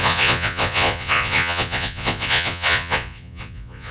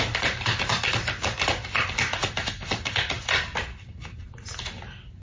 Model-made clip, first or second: first